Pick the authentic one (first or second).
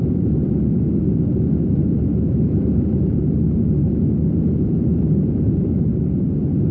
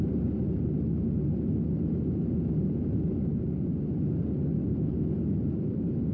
second